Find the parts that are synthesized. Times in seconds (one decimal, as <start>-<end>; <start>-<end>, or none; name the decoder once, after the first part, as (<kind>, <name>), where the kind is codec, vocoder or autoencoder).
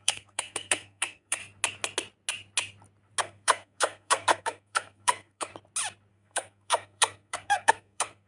0.0-1.4 (codec, SNAC); 3.2-5.5; 6.1-8.3